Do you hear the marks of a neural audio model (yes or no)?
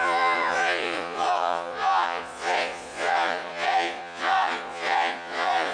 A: yes